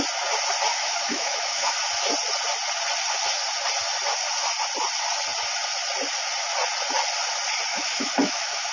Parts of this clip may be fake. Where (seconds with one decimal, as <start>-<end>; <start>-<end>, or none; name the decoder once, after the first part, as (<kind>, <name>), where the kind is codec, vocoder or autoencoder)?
0.7-1.7 (autoencoder, DAC-VAE); 7.7-8.7